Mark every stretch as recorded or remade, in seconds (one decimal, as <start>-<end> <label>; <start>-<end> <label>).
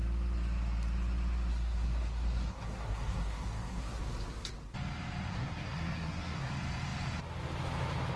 0.0-1.5 recorded; 1.5-4.0 remade; 4.0-5.3 recorded; 5.3-6.5 remade; 6.5-8.2 recorded